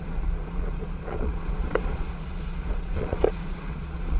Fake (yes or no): yes